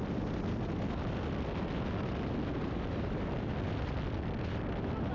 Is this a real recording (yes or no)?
yes